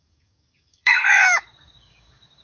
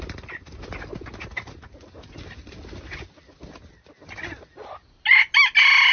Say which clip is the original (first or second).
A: second